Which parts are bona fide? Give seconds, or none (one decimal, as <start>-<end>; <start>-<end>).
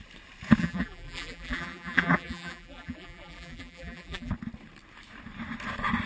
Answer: 0.0-0.6; 4.3-6.1